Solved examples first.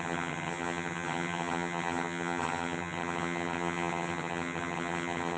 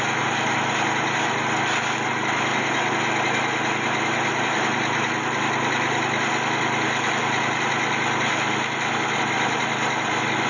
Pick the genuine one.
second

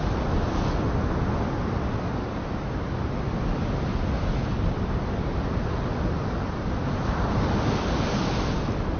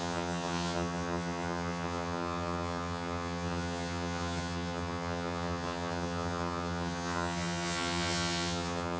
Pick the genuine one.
first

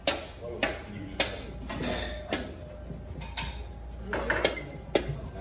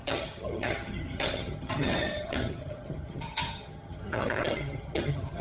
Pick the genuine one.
first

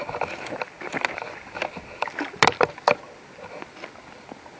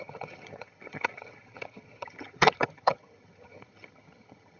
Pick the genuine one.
first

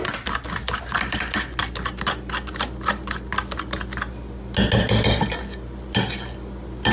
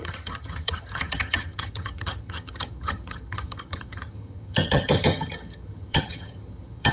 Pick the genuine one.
first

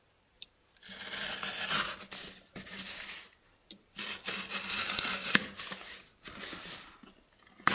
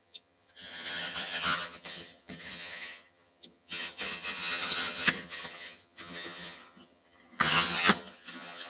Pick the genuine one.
first